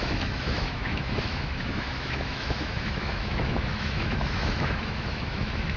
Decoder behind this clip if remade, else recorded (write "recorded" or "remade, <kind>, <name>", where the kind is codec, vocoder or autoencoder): remade, autoencoder, DAC-VAE